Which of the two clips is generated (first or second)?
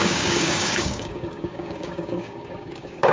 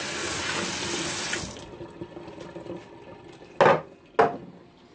first